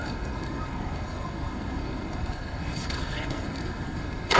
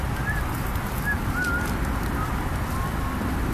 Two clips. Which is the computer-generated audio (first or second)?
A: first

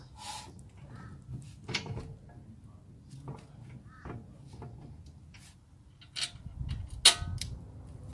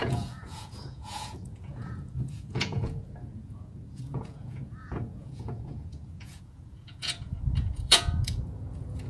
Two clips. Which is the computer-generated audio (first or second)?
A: second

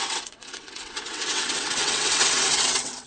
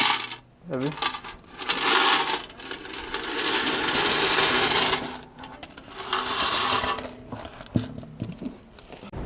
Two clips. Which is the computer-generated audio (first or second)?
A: first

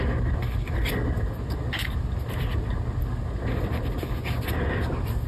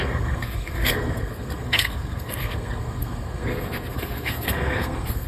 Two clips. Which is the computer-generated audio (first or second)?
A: second